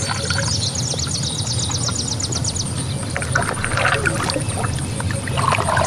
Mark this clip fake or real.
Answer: real